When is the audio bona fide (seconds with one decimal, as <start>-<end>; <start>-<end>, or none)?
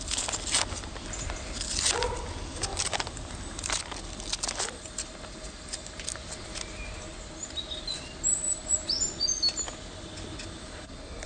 0.0-2.7; 3.8-11.3